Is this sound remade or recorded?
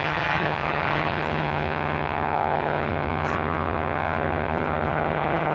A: remade